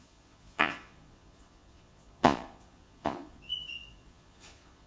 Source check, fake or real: fake